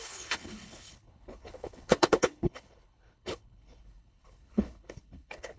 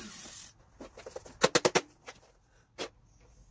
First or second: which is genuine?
second